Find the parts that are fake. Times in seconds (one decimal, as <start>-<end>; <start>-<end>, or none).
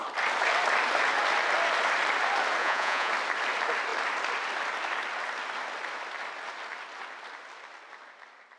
2.6-3.1